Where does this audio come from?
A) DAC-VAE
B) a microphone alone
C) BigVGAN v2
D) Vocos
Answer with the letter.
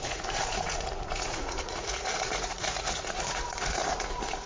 D